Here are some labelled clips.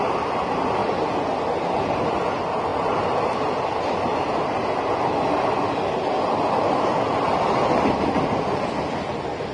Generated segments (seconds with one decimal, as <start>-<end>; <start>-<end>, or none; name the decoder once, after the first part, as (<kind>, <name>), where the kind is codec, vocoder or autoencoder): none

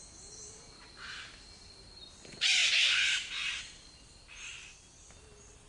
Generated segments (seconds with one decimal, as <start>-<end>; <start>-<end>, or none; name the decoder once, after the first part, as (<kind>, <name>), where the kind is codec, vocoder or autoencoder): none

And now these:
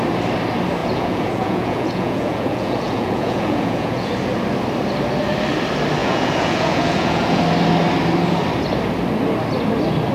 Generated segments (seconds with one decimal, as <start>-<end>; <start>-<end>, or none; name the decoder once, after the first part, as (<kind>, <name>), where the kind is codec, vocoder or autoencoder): 0.8-4.1 (vocoder, Vocos); 6.0-7.4

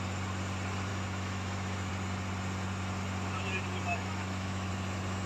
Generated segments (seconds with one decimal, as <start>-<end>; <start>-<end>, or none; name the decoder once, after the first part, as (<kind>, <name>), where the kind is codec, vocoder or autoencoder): 0.9-1.9 (autoencoder, DAC-VAE); 3.9-4.7

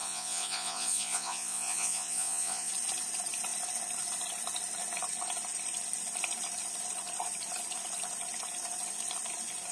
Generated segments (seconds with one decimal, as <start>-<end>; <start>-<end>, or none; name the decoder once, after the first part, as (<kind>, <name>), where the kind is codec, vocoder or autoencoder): 0.0-2.7 (vocoder, Vocos)